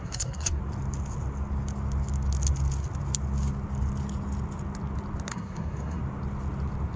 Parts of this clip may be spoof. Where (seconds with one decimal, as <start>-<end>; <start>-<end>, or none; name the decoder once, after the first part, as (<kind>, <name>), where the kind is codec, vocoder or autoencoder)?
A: 0.0-0.6 (codec, SNAC); 5.3-6.0